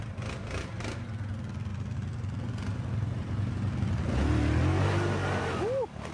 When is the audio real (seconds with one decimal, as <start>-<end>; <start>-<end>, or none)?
0.0-6.1